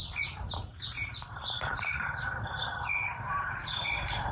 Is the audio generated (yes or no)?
yes